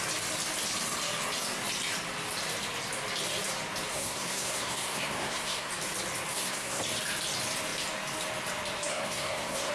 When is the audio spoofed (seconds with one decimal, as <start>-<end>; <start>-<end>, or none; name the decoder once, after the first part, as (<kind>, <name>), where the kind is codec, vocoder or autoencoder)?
3.9-5.7 (codec, SNAC); 6.3-6.8; 8.9-9.7